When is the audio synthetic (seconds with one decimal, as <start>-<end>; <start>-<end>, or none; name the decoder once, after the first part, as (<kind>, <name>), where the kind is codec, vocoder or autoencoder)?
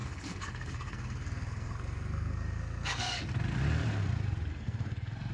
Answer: 0.0-3.2 (codec, SNAC); 4.5-5.3